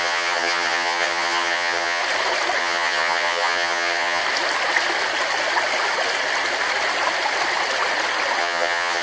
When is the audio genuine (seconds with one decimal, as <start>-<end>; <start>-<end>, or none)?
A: 2.0-2.6; 4.2-8.4